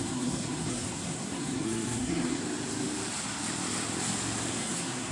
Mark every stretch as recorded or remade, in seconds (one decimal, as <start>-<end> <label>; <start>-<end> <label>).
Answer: 0.0-2.4 remade; 2.4-4.5 recorded; 4.5-5.1 remade